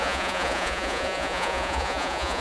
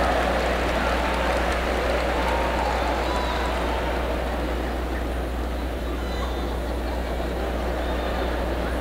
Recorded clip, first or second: second